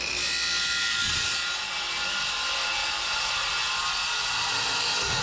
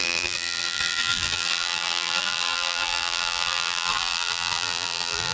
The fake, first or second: second